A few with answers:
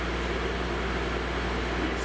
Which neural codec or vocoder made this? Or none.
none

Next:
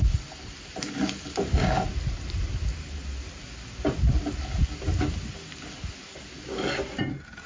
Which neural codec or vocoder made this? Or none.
none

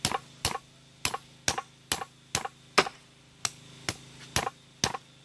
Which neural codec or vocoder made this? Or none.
none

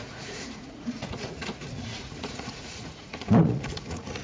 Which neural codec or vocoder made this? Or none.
vocoder, Vocos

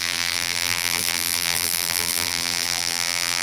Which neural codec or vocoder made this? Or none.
vocoder, BigVGAN v2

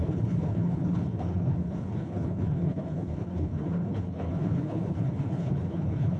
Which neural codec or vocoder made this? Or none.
codec, HILCodec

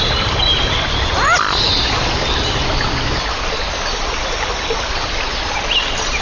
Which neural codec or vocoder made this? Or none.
none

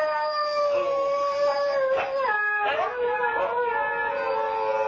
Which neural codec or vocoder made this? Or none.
none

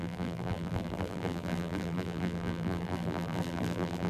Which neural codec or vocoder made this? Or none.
vocoder, BigVGAN v2